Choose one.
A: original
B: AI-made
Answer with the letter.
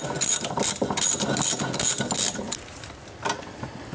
A